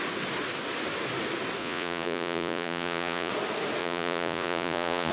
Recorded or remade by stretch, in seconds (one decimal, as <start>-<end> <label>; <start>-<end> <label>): 0.0-1.6 recorded; 1.6-3.3 remade; 3.3-3.8 recorded; 3.8-5.1 remade